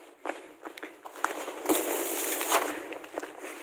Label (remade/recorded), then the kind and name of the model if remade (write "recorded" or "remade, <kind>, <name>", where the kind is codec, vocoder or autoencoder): recorded